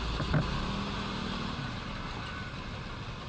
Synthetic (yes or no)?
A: no